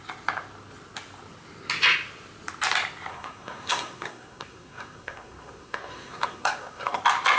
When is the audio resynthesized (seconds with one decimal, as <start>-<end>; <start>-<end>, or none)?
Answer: 3.1-7.0